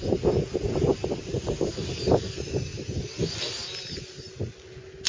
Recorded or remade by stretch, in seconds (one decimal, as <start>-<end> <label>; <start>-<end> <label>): 0.0-1.3 recorded; 1.3-1.9 remade; 1.9-5.1 recorded